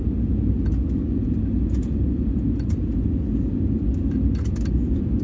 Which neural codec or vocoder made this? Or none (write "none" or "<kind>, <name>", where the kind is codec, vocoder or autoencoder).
none